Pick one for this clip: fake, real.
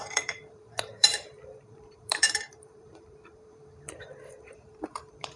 fake